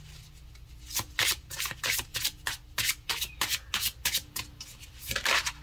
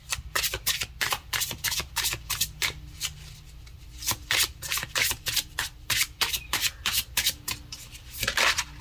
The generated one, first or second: second